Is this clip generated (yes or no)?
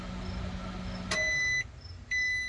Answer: no